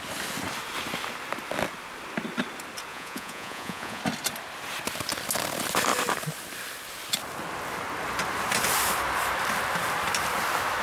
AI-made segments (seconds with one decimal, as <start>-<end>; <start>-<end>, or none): 2.9-4.0